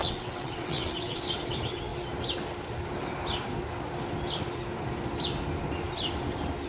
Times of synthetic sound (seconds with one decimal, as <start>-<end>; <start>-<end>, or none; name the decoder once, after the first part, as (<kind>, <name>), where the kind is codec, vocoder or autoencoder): 0.0-1.2 (vocoder, WaveNeXt)